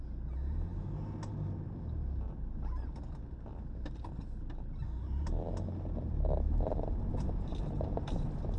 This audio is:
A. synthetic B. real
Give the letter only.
B